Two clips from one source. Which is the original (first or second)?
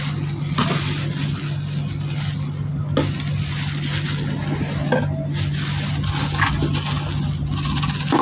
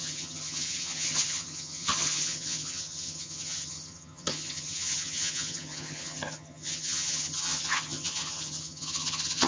first